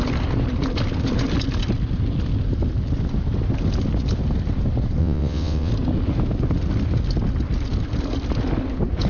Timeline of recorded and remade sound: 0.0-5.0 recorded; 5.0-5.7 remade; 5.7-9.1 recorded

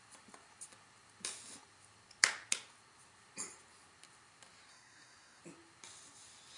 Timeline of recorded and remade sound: 0.0-4.7 recorded; 4.7-5.4 remade; 5.4-6.6 recorded

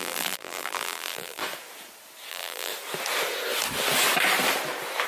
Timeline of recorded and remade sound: 0.0-1.4 remade; 1.4-2.3 recorded; 2.3-2.7 remade; 2.7-5.1 recorded

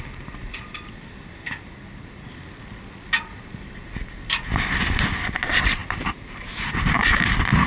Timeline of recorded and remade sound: 0.0-7.7 recorded

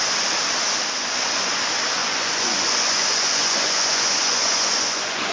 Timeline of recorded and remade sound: 0.0-1.0 recorded; 1.0-1.5 remade; 1.5-2.0 recorded; 2.0-5.3 remade

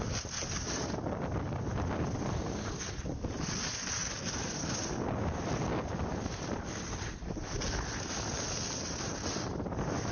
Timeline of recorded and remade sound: 0.0-4.0 remade; 4.0-6.3 recorded; 6.3-10.1 remade

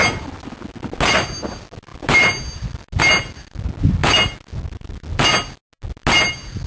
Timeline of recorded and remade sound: 0.0-6.7 recorded